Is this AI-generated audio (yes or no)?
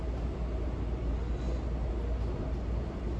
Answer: no